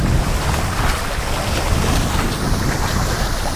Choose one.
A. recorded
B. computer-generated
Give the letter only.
A